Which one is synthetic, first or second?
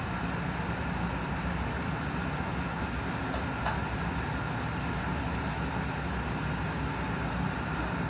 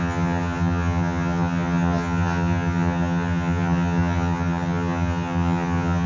second